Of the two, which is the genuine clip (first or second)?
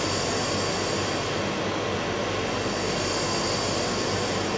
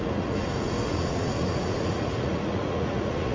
first